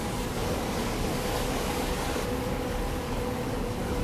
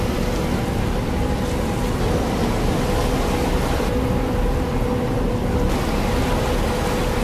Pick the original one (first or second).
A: second